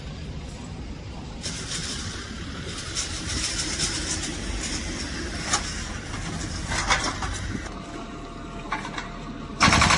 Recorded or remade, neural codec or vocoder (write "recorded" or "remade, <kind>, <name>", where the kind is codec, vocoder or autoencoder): remade, vocoder, BigVGAN v2